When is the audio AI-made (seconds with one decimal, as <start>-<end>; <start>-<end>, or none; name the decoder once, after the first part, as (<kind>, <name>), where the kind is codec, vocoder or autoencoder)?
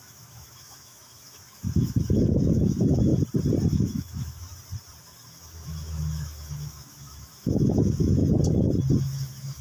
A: 0.0-3.1 (autoencoder, DAC-VAE); 3.7-4.5; 5.0-8.2; 9.0-9.6